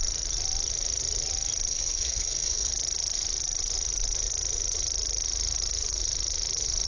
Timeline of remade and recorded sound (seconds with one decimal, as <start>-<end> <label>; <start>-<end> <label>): 0.0-1.7 recorded; 1.7-2.7 remade; 2.7-6.9 recorded